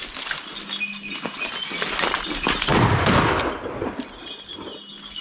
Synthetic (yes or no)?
no